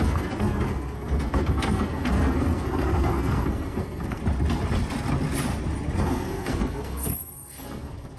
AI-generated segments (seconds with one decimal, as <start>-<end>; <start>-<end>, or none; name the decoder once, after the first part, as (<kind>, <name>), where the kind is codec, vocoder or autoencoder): 0.0-4.2 (codec, SNAC); 6.0-8.2